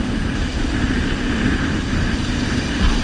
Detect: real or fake real